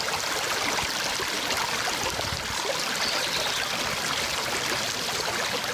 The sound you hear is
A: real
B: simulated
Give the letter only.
A